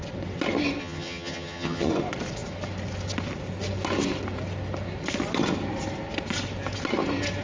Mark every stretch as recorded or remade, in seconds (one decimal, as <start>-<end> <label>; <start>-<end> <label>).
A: 0.0-0.8 recorded; 0.8-1.9 remade; 1.9-7.4 recorded